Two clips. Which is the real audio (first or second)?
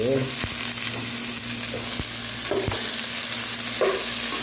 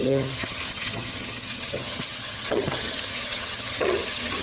first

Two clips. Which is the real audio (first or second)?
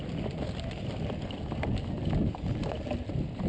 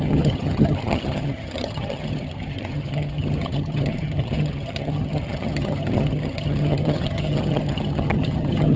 first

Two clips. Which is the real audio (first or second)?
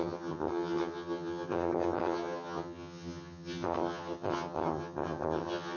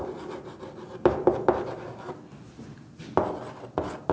second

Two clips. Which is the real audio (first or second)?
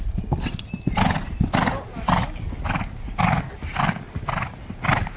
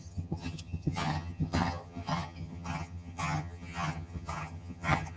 first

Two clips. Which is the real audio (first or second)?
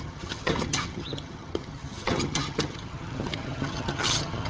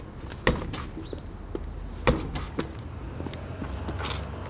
second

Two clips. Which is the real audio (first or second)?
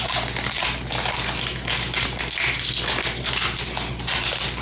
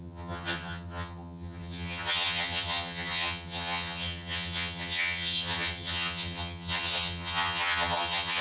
first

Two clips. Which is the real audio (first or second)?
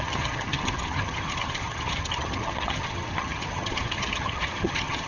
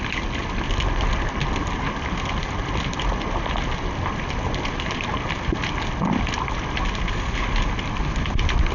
second